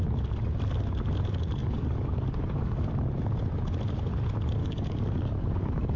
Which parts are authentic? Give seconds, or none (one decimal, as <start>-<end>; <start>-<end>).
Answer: 0.0-1.6; 2.9-4.6